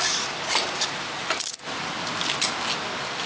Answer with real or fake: real